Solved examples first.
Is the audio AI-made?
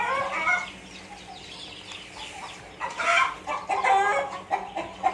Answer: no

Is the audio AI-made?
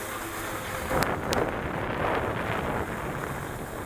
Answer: no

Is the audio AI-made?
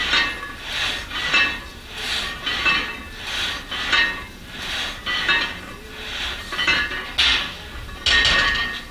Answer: no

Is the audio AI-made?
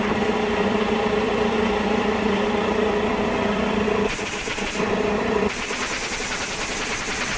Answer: yes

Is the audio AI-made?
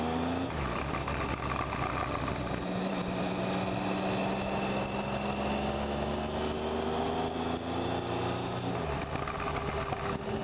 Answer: no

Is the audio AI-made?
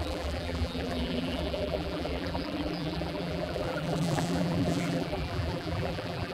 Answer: yes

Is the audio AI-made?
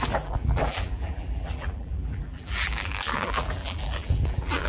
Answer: yes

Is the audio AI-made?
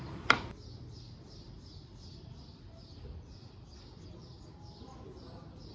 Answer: no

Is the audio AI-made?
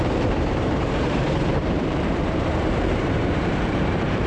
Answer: yes